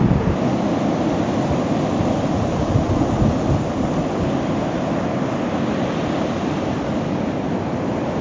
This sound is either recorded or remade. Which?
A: recorded